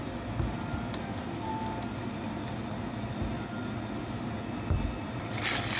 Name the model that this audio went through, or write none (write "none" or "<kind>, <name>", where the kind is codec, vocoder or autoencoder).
none